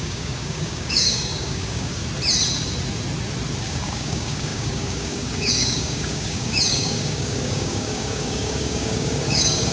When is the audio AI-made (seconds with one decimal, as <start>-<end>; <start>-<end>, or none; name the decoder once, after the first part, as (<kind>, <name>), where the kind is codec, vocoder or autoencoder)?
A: 0.0-2.0 (codec, DAC); 3.6-9.7